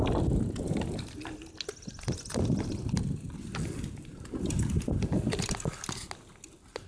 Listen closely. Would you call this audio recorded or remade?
recorded